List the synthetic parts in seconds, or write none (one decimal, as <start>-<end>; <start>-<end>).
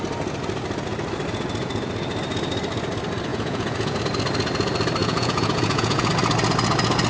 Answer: 3.3-4.0; 5.0-6.1